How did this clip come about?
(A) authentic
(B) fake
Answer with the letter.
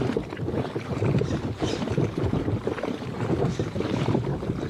B